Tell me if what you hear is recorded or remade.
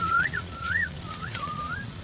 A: remade